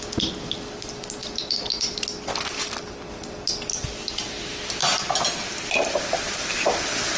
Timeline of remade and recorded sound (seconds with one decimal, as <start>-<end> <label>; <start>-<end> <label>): 0.0-7.2 recorded